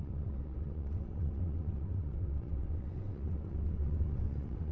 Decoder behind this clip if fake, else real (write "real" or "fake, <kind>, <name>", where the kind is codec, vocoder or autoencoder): fake, vocoder, WaveNeXt